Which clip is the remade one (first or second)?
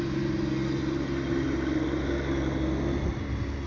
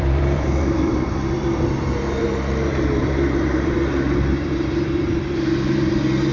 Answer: second